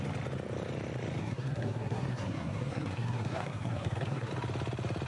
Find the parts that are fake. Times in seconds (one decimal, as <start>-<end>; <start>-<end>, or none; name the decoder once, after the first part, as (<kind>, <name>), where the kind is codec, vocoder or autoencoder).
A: 1.2-4.3 (codec, SNAC)